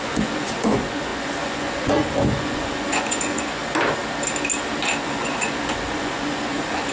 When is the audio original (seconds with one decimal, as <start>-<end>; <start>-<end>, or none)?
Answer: 3.6-5.0